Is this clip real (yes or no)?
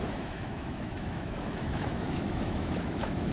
no